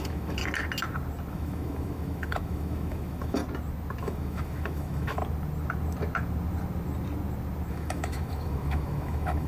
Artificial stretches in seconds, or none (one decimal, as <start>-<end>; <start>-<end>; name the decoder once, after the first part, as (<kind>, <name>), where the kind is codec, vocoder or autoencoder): 0.0-0.4 (autoencoder, DAC-VAE); 1.3-3.4; 4.0-5.2; 7.7-9.5